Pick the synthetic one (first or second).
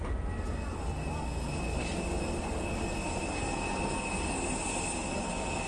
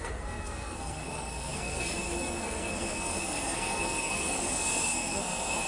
second